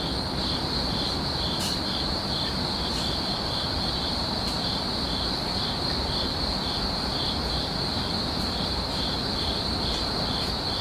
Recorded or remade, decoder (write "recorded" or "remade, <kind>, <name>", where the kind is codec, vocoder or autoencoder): remade, vocoder, BigVGAN v2